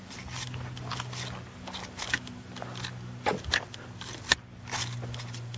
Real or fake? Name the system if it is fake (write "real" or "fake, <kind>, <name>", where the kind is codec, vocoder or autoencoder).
real